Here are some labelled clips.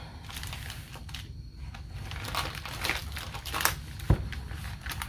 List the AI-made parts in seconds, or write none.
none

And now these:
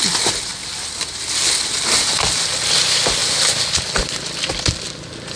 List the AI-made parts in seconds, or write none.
none

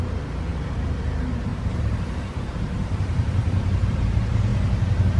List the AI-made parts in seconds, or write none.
1.5-4.0